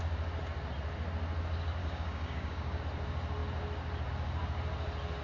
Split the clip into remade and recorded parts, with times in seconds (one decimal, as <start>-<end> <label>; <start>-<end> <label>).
0.0-1.8 recorded; 1.8-2.8 remade; 2.8-5.2 recorded